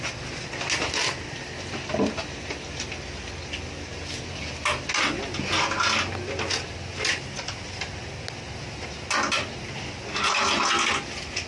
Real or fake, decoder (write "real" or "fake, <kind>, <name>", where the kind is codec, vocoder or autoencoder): real